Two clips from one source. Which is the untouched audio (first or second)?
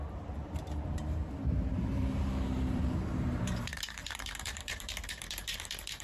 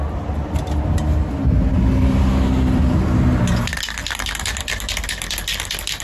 second